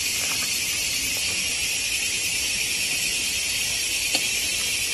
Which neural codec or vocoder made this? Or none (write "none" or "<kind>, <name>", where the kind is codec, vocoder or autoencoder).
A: vocoder, BigVGAN v2